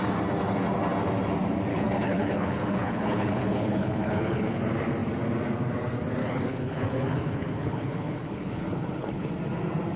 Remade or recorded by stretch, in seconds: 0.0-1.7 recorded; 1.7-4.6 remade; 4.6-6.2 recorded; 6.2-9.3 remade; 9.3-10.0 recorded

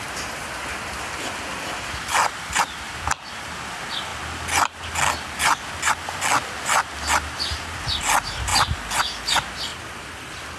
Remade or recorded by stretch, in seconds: 0.0-10.6 recorded